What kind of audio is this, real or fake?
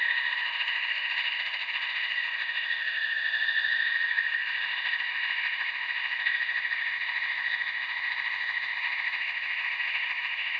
fake